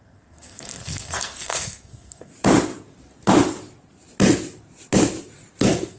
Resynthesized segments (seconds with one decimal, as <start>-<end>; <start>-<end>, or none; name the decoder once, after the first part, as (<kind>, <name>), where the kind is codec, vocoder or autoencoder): 0.0-2.3 (codec, SNAC); 5.6-6.0